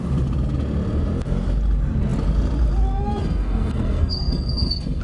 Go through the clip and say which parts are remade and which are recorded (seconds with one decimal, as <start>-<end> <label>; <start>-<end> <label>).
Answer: 0.0-3.2 recorded; 3.2-5.0 remade